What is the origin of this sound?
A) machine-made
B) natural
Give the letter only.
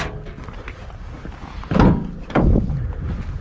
B